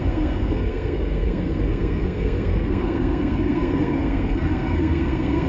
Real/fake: fake